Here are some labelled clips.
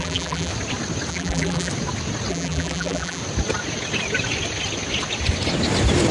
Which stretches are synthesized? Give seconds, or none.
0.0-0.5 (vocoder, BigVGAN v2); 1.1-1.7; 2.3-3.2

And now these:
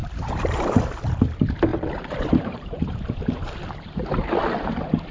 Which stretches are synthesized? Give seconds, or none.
0.0-0.7 (vocoder, BigVGAN v2); 1.7-4.4